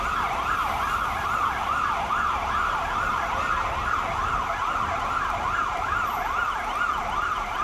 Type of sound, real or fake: real